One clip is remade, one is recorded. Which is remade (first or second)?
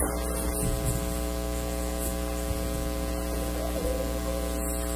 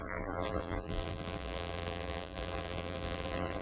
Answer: second